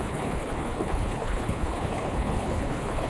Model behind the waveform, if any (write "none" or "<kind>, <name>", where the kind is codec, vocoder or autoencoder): codec, HILCodec